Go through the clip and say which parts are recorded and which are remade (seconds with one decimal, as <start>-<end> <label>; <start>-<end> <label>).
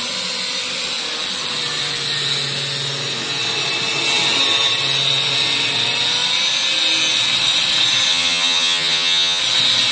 0.0-8.1 recorded; 8.1-9.4 remade; 9.4-9.9 recorded